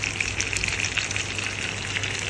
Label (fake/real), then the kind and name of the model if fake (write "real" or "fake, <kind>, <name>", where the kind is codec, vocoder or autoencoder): real